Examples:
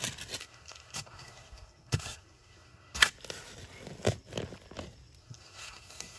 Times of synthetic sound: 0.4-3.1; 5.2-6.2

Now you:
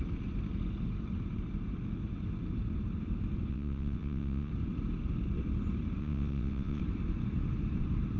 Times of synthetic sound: 3.5-4.5; 6.0-6.8

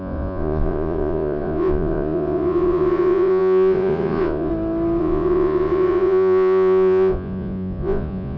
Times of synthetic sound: 0.0-4.5; 5.0-8.4

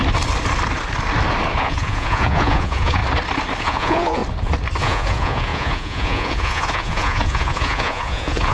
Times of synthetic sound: 1.6-3.0; 3.6-4.2; 4.8-8.5

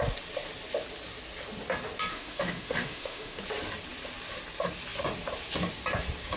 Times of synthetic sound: 2.1-3.4